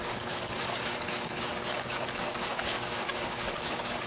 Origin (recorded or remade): remade